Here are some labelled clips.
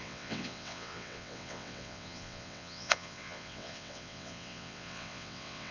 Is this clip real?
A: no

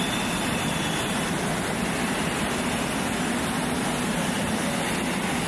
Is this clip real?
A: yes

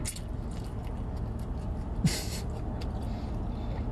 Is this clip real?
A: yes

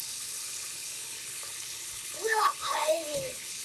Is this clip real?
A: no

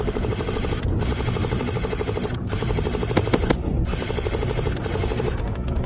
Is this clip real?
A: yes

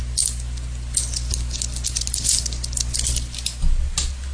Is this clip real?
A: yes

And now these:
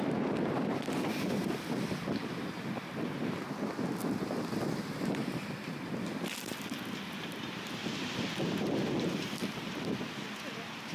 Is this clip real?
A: yes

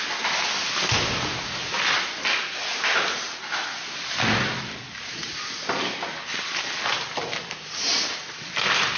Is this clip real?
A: yes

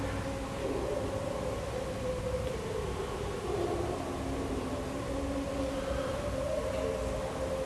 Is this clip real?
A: yes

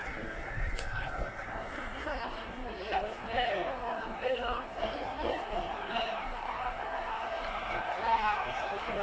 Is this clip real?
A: no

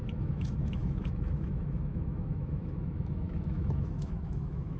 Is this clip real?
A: no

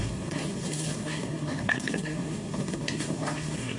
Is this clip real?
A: no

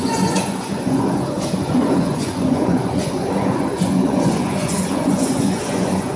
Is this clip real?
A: no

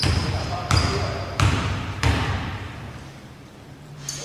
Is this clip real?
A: no